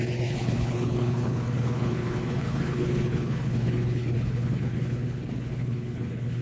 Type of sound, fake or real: fake